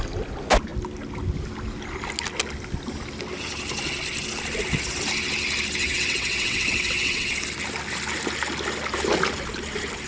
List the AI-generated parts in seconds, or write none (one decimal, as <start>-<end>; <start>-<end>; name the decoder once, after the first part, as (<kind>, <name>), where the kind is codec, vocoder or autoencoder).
5.8-7.3 (vocoder, WaveNeXt)